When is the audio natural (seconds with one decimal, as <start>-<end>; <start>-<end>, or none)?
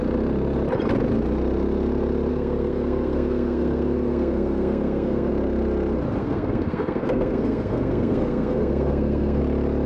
0.0-2.3; 5.3-6.2; 9.4-9.9